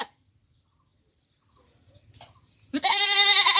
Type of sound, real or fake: fake